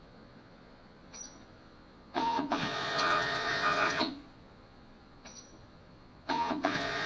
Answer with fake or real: fake